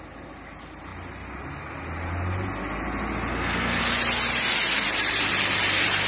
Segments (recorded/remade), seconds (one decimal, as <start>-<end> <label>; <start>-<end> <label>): 0.0-3.3 recorded; 3.3-3.8 remade; 3.8-6.1 recorded